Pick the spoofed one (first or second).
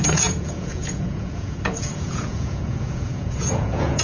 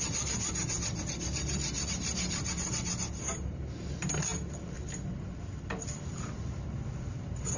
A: first